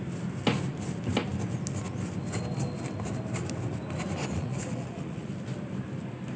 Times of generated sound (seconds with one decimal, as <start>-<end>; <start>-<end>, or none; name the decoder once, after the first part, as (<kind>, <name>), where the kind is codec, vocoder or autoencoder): 4.3-5.3 (vocoder, Vocos)